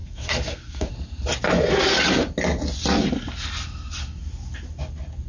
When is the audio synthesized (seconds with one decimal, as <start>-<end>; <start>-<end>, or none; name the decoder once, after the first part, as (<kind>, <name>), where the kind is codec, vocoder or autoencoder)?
0.0-0.9 (codec, SNAC)